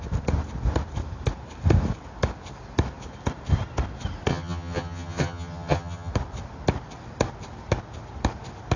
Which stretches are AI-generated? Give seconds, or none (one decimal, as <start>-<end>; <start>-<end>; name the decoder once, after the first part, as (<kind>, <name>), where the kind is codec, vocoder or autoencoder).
4.3-6.1 (vocoder, HiFi-GAN)